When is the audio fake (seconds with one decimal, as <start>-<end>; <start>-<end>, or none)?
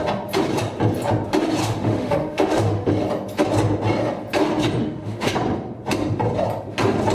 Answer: 1.6-2.9; 4.8-5.3